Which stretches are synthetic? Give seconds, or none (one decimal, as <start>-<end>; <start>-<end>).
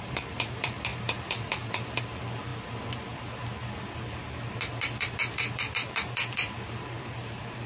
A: 0.0-0.9; 2.0-7.7